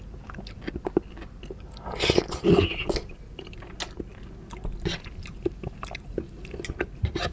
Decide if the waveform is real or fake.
real